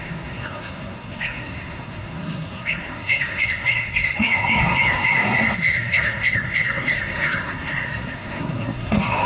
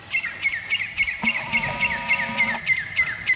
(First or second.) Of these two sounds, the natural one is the second